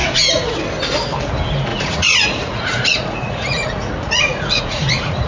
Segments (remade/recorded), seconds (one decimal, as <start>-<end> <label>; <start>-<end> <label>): 0.0-0.6 remade; 0.6-1.7 recorded; 1.7-5.3 remade